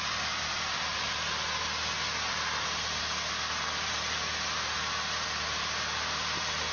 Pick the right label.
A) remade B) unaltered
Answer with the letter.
B